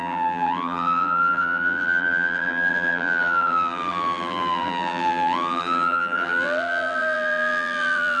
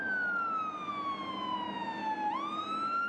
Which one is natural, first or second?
second